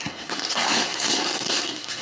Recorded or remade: remade